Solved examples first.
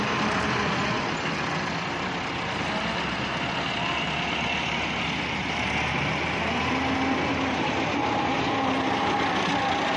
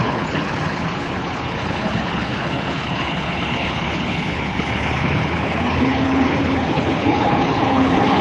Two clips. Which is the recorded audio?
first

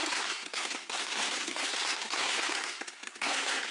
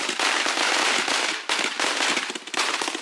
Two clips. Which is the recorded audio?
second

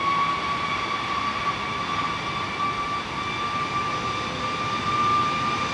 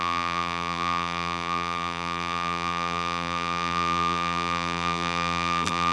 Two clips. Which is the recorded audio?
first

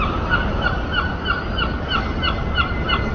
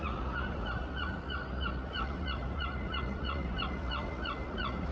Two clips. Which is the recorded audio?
first